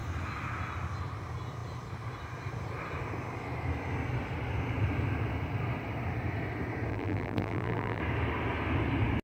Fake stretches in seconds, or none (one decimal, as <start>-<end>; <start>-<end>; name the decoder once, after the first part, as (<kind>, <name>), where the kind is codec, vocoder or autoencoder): 6.9-8.0 (vocoder, BigVGAN v2)